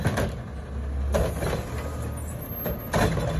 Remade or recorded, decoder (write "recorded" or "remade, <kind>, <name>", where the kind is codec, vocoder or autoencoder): recorded